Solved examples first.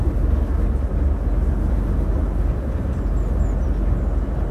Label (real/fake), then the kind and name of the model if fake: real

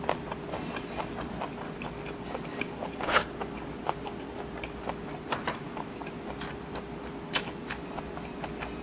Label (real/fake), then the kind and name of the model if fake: real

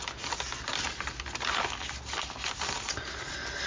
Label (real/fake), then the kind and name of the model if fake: real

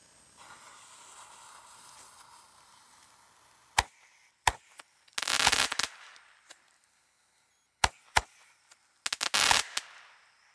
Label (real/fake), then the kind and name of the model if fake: real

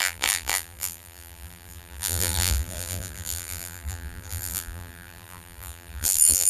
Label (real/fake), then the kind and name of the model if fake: fake, vocoder, BigVGAN v2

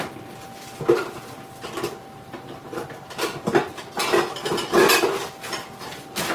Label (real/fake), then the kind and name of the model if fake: real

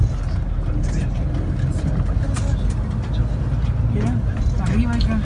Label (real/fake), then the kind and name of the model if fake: real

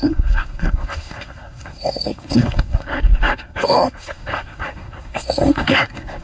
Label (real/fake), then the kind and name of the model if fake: fake, codec, SNAC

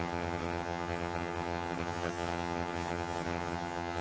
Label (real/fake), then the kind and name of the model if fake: fake, vocoder, HiFi-GAN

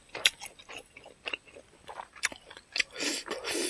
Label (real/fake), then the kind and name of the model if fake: real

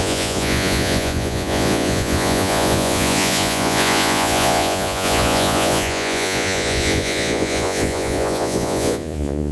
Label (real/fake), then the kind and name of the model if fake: fake, vocoder, Vocos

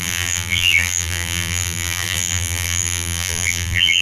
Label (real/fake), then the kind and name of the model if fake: fake, vocoder, BigVGAN v2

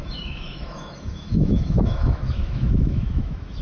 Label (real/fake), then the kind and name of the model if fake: fake, autoencoder, DAC-VAE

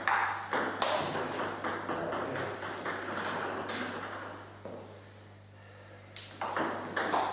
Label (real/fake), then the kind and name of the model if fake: real